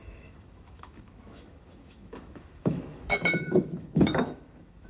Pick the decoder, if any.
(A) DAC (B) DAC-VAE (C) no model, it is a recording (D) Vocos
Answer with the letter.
B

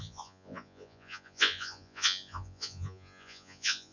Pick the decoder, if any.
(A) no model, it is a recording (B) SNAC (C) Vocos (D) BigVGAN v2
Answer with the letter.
C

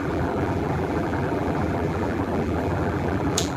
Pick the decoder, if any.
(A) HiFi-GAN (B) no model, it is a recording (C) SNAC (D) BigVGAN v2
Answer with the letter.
D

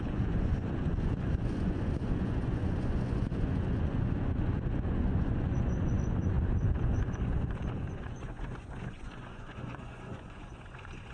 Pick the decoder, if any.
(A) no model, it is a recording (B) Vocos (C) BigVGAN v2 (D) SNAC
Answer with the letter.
B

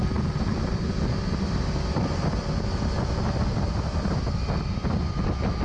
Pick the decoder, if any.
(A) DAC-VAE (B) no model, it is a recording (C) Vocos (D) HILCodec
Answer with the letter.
B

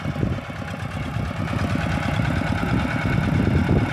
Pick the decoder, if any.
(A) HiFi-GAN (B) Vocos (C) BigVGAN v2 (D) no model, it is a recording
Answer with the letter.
D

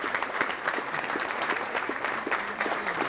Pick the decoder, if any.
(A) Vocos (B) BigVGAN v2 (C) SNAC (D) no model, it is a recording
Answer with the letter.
B